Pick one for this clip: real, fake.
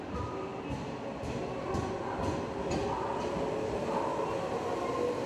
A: real